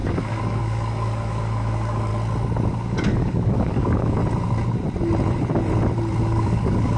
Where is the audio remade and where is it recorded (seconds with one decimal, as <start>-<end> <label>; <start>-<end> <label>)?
0.0-2.1 remade; 2.1-2.7 recorded; 2.7-4.2 remade; 4.2-6.2 recorded; 6.2-7.0 remade